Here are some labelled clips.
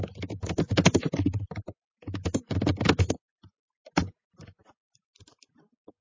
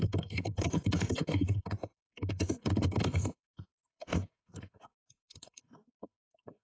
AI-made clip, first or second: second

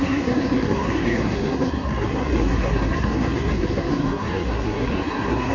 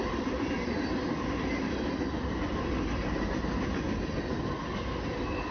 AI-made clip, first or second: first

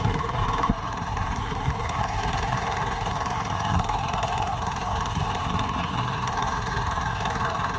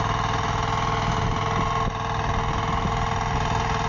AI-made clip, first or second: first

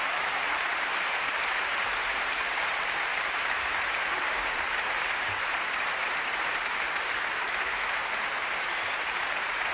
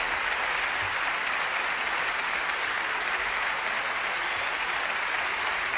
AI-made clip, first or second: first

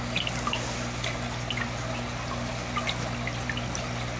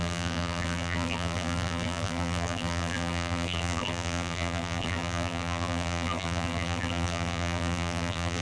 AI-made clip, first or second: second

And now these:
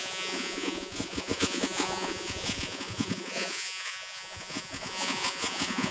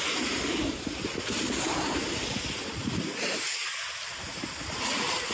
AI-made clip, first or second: first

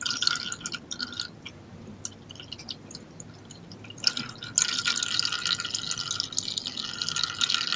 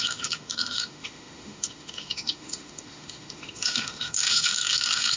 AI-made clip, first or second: second